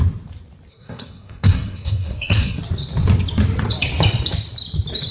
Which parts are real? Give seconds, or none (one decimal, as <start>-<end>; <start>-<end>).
0.0-0.7; 2.6-5.1